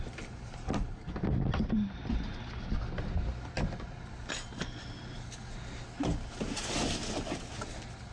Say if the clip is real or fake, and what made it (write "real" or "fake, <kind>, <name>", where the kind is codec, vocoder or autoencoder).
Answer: real